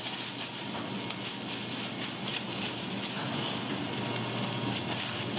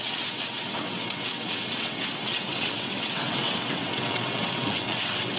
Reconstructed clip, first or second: second